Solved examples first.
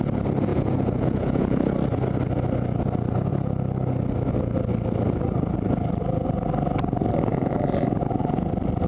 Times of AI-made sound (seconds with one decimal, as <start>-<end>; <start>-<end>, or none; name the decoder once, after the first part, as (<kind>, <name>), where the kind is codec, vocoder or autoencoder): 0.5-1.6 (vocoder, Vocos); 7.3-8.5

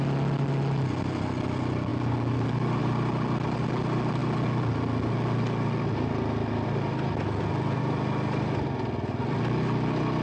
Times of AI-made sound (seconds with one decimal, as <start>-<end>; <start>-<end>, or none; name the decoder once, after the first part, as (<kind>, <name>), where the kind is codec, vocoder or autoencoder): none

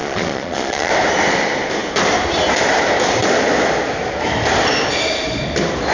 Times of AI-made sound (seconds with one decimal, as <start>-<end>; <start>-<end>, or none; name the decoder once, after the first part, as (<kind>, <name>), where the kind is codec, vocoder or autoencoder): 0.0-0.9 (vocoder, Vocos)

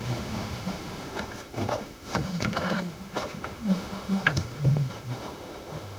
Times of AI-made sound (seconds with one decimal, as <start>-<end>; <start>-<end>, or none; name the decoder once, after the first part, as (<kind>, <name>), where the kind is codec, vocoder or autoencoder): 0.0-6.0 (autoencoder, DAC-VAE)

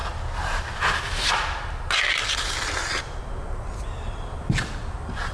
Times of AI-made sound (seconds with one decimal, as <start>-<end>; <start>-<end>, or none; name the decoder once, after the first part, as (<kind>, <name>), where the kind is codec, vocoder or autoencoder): none

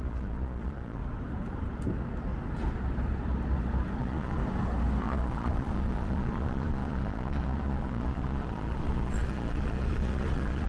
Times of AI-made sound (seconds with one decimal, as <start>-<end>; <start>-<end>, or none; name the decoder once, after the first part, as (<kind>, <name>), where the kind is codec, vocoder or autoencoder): 0.0-1.0 (vocoder, Vocos); 4.0-4.4; 5.0-10.7